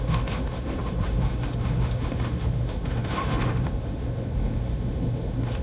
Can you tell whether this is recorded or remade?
remade